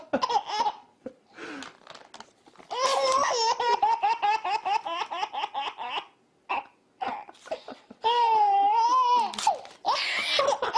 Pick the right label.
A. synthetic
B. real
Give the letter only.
B